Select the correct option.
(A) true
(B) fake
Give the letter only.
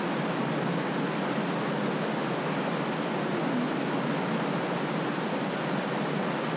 A